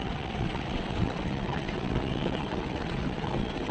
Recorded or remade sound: remade